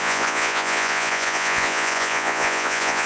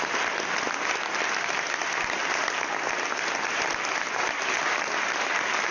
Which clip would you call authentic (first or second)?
second